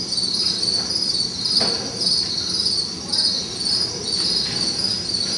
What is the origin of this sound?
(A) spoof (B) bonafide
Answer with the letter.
B